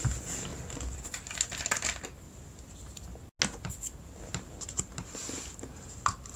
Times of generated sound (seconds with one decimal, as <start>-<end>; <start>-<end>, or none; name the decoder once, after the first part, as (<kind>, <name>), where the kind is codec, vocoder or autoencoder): none